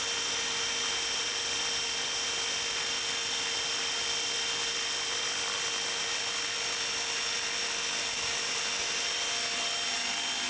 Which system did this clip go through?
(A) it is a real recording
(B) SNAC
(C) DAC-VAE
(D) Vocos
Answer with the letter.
A